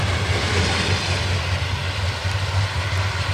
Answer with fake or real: real